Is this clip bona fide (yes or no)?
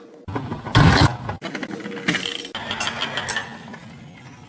yes